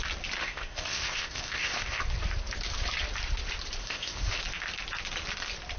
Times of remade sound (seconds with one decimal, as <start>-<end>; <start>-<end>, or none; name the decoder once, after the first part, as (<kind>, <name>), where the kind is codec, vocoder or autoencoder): 0.4-2.0 (codec, ZipCodec); 3.8-4.4